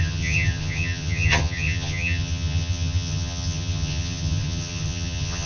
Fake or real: fake